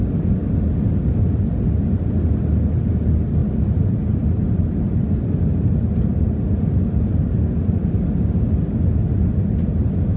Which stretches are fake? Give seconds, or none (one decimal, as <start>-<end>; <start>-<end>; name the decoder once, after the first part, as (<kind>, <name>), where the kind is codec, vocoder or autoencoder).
none